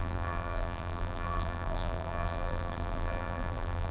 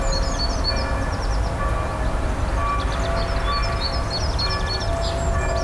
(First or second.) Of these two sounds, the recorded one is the second